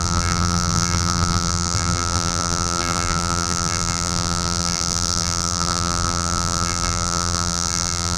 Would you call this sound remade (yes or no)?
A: yes